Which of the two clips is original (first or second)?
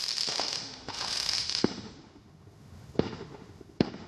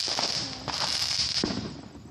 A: second